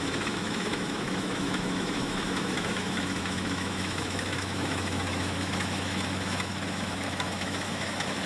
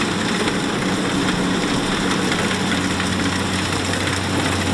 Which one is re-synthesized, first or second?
first